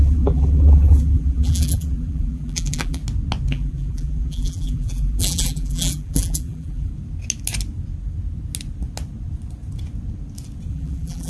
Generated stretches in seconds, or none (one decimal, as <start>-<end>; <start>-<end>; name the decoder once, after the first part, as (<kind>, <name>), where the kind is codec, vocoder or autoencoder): 0.0-3.0 (vocoder, BigVGAN v2); 3.5-6.9; 10.7-11.3